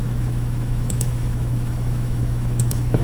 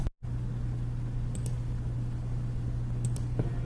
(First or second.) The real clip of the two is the second